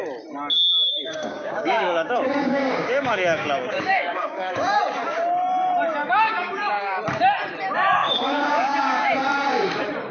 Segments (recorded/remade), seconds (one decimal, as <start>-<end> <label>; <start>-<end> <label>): 0.0-0.9 recorded; 0.9-4.8 remade; 4.8-6.0 recorded; 6.0-7.0 remade; 7.0-8.0 recorded; 8.0-9.1 remade; 9.1-10.1 recorded